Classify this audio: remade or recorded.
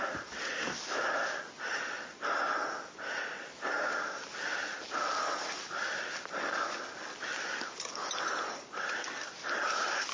recorded